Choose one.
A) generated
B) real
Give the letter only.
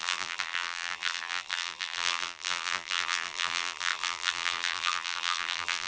A